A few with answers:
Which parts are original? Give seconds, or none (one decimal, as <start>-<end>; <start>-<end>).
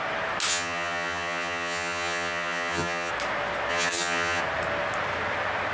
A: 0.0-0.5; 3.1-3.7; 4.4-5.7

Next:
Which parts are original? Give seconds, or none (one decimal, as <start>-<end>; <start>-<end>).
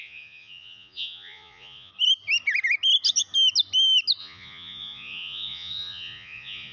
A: 1.9-4.2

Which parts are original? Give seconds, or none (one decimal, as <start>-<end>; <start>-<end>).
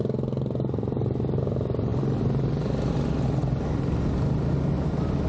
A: 0.0-5.3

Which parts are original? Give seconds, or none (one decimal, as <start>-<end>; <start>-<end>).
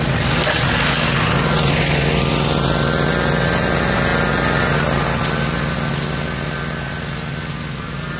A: 0.0-8.2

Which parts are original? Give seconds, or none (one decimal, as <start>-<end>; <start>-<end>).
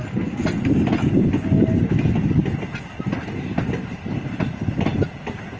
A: 0.0-5.6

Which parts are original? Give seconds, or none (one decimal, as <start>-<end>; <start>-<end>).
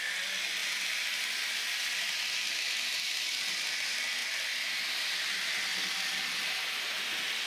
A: 0.0-7.5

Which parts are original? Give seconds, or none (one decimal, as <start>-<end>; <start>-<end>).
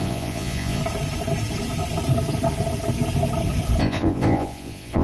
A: 0.8-3.8